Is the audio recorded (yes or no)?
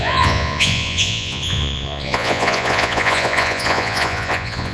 no